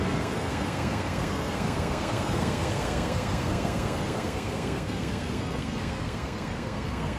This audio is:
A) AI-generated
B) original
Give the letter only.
A